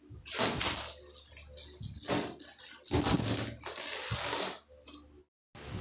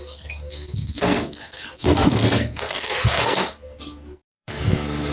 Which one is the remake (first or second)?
second